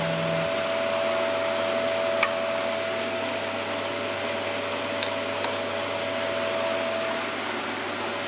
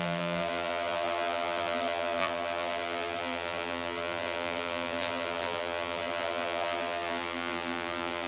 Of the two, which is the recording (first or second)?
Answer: first